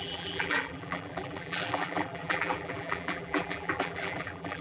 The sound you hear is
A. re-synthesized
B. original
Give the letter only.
A